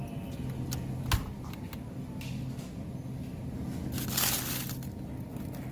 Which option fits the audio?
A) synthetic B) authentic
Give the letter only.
B